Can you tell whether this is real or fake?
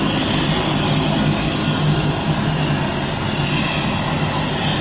real